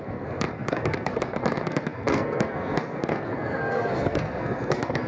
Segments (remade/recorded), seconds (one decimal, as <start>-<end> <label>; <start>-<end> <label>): 0.0-5.1 remade